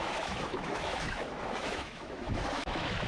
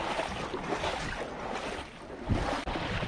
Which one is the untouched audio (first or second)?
second